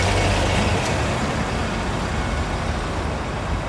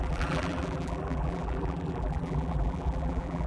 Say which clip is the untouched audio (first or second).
first